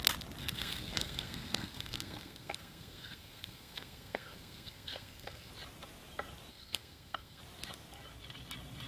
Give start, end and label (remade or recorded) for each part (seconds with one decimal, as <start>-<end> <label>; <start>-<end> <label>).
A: 0.0-0.4 recorded; 0.4-5.5 remade; 5.5-6.5 recorded; 6.5-7.4 remade; 7.4-8.9 recorded